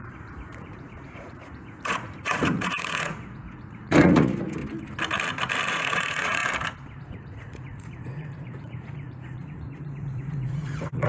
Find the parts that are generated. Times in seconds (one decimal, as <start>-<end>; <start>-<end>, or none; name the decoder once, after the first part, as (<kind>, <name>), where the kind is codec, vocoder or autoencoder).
0.0-4.6 (vocoder, Vocos); 5.7-6.4; 7.0-11.1